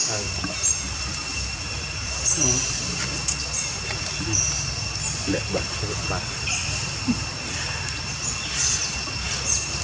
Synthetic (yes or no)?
no